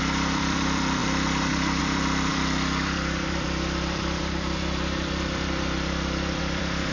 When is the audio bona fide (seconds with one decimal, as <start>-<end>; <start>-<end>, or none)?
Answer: none